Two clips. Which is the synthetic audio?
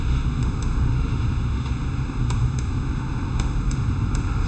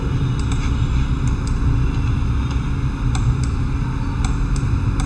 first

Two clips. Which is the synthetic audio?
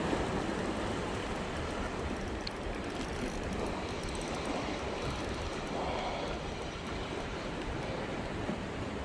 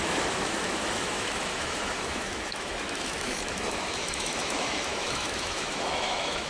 second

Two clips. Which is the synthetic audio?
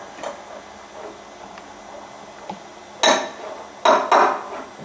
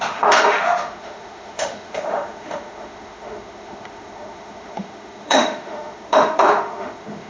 second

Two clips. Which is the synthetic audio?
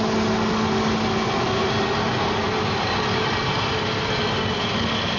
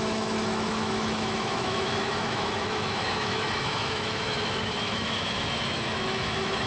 second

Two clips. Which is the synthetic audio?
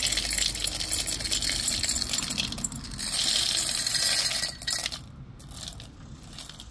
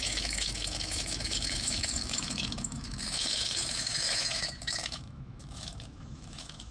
second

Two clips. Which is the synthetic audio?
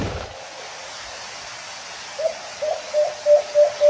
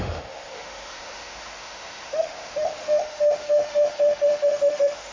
second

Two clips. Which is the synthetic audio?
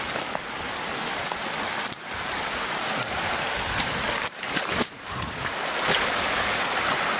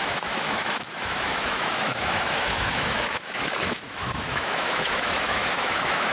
second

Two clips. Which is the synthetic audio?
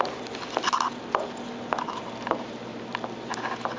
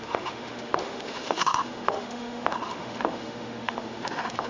second